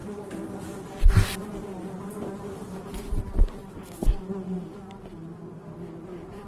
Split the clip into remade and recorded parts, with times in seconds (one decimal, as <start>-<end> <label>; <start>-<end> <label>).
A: 0.0-5.6 remade; 5.6-6.5 recorded